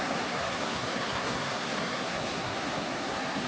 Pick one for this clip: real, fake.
fake